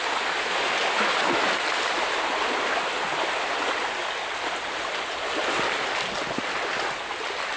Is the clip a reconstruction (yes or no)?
no